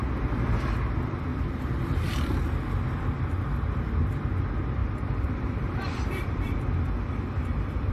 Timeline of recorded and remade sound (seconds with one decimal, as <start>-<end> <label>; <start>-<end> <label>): 0.0-1.3 recorded; 1.3-1.8 remade; 1.8-4.8 recorded; 4.8-6.5 remade; 6.5-7.9 recorded